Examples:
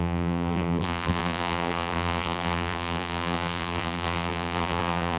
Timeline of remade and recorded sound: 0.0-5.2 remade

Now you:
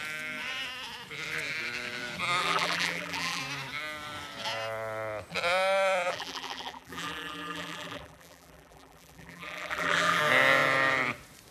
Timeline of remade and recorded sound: 0.0-2.4 recorded; 2.4-3.4 remade; 3.4-6.1 recorded; 6.1-10.2 remade; 10.2-11.5 recorded

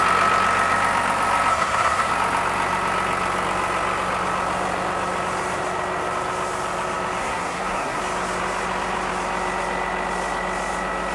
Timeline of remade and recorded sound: 0.0-1.5 recorded; 1.5-2.1 remade; 2.1-7.2 recorded; 7.2-8.0 remade; 8.0-11.1 recorded

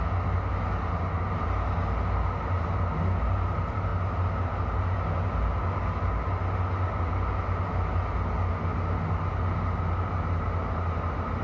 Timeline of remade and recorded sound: 0.0-11.4 recorded

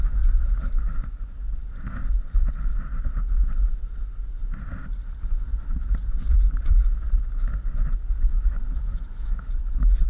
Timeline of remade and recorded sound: 0.0-8.3 recorded; 8.3-9.5 remade; 9.5-10.1 recorded

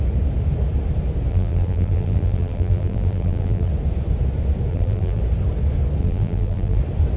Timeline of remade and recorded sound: 0.0-1.3 recorded; 1.3-3.7 remade; 3.7-4.7 recorded; 4.7-5.2 remade; 5.2-6.0 recorded; 6.0-6.8 remade; 6.8-7.2 recorded

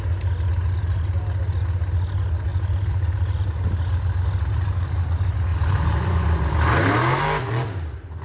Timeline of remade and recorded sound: 0.0-2.5 recorded; 2.5-3.5 remade; 3.5-5.5 recorded; 5.5-7.2 remade; 7.2-8.2 recorded

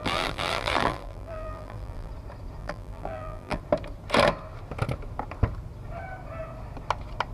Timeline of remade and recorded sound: 0.0-2.1 remade; 2.1-2.6 recorded; 2.6-3.6 remade; 3.6-7.3 recorded